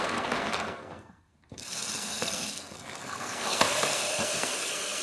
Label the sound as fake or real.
fake